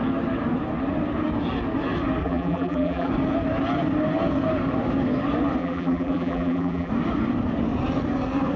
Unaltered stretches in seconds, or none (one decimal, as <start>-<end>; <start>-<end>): 0.0-2.2; 3.1-5.6; 6.9-8.6